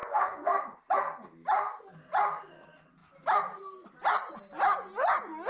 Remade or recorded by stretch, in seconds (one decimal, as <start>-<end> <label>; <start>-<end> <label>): 0.0-0.6 remade; 0.6-5.5 recorded